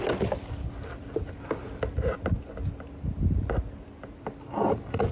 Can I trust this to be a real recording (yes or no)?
yes